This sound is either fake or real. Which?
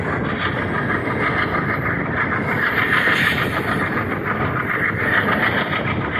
real